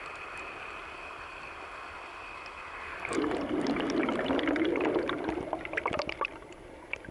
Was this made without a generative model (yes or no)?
yes